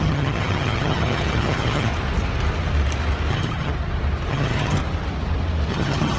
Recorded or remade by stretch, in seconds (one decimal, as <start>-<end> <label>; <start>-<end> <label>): 0.0-1.9 remade; 1.9-3.3 recorded; 3.3-3.7 remade; 3.7-4.3 recorded; 4.3-4.8 remade; 4.8-5.7 recorded; 5.7-6.2 remade